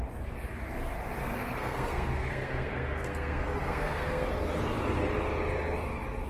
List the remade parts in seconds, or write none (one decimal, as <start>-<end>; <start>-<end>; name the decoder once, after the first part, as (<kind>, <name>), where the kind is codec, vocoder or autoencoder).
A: 1.2-4.3 (codec, SNAC)